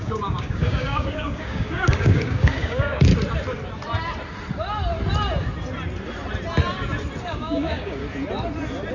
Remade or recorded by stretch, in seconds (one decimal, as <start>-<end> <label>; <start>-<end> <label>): 0.0-3.1 remade; 3.1-7.2 recorded; 7.2-8.0 remade; 8.0-8.9 recorded